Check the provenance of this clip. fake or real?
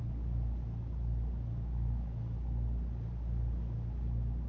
real